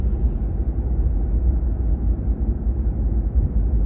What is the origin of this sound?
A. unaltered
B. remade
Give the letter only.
A